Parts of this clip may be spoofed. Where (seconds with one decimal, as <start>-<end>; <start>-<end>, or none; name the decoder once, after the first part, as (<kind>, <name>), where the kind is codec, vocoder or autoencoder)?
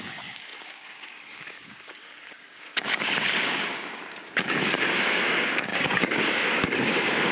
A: 0.0-7.3 (codec, DAC)